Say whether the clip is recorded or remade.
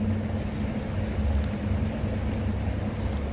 recorded